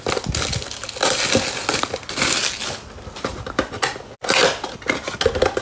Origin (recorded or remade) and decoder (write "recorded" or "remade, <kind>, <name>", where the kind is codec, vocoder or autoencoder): recorded